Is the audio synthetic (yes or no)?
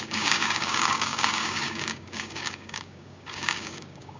yes